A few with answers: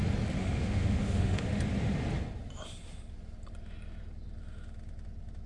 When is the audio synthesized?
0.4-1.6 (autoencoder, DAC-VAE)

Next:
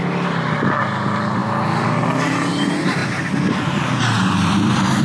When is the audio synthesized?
none

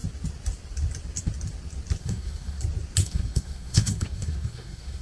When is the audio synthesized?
2.0-2.6 (codec, SNAC); 3.0-5.0

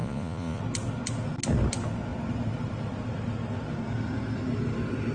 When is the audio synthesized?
0.0-0.6 (vocoder, Vocos)

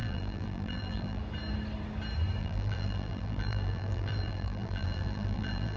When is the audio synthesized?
0.0-1.2 (vocoder, BigVGAN v2); 2.4-5.8

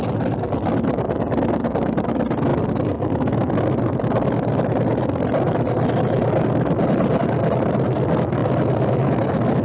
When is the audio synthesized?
2.5-7.2 (vocoder, BigVGAN v2)

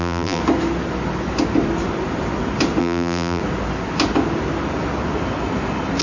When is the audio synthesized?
0.0-0.4 (vocoder, BigVGAN v2); 2.8-3.4

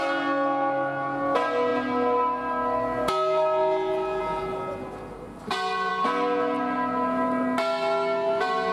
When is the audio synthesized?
none